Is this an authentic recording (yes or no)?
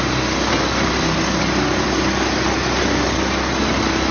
yes